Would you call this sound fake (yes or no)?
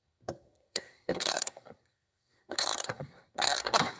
yes